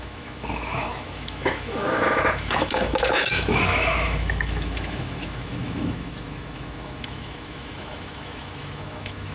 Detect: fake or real fake